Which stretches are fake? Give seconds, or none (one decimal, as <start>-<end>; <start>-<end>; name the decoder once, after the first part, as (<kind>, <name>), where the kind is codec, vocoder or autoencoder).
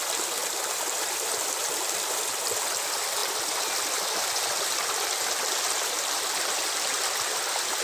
none